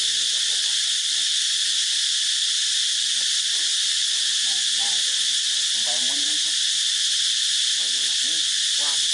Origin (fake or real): real